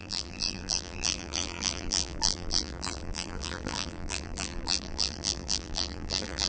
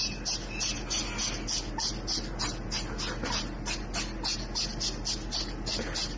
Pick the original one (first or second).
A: second